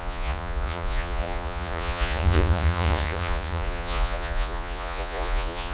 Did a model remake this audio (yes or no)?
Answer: yes